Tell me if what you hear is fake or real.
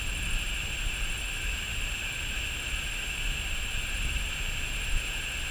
real